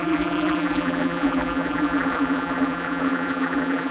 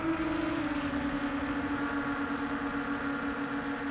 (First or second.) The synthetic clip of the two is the first